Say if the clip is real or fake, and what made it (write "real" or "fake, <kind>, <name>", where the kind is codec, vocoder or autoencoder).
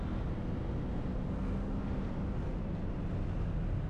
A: real